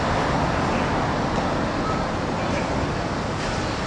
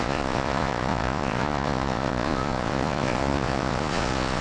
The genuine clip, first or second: first